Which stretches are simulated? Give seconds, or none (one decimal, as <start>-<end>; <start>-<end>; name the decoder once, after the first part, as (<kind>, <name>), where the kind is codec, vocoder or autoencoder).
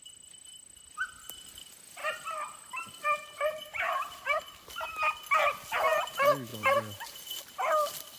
2.0-4.4 (vocoder, BigVGAN v2); 6.5-7.4